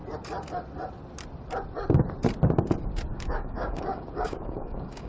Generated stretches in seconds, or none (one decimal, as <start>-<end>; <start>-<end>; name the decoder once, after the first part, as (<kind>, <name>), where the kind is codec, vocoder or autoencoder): 3.1-5.1 (codec, DAC)